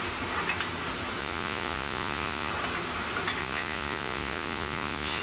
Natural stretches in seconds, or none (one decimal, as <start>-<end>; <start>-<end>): 0.0-1.2; 2.5-3.4